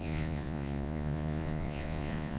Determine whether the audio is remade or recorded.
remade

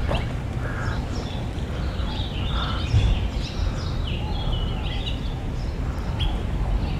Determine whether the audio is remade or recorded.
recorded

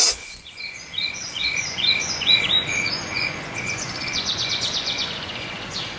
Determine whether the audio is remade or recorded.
remade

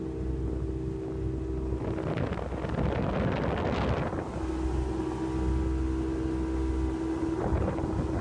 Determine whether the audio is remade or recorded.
recorded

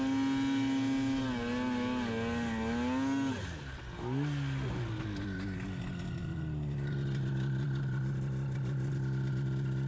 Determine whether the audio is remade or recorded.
recorded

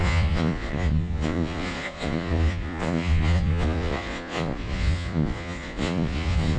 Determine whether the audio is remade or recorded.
remade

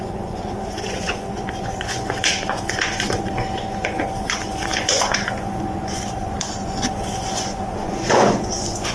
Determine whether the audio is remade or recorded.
remade